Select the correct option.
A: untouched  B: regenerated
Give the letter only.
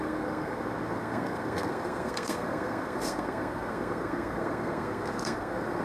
B